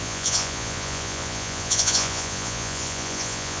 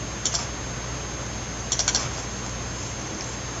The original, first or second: second